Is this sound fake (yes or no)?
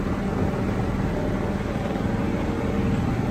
no